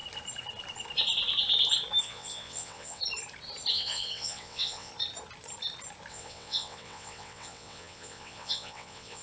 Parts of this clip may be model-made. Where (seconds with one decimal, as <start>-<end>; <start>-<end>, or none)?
2.0-3.0; 3.7-4.9; 6.1-9.2